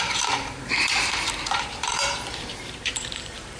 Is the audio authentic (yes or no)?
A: no